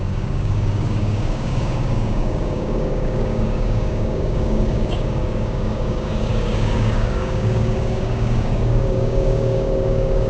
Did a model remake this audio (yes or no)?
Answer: yes